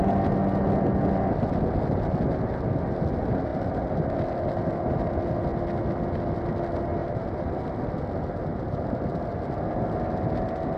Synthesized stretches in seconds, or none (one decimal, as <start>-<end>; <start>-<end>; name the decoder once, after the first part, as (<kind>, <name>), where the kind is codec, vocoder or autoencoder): 7.0-7.5 (vocoder, BigVGAN v2); 8.5-9.0